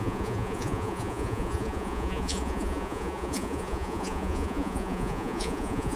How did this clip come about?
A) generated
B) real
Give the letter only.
A